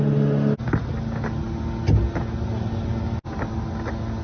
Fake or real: real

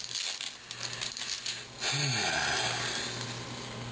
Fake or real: real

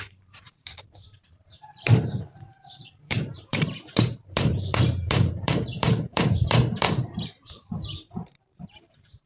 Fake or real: fake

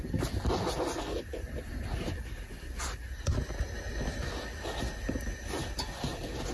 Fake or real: real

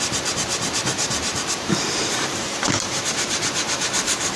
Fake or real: fake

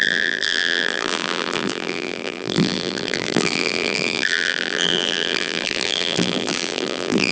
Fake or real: fake